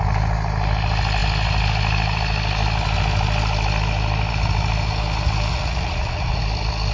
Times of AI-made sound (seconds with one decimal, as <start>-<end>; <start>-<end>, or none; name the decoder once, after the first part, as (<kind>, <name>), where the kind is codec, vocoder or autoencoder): 5.5-6.4 (vocoder, Vocos)